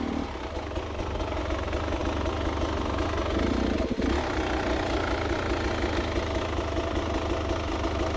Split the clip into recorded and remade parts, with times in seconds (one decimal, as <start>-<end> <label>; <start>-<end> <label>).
0.0-8.2 recorded